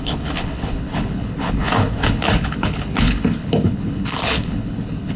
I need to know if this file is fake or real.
fake